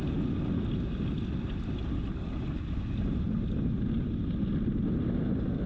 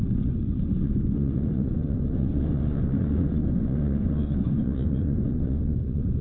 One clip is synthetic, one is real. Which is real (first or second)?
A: first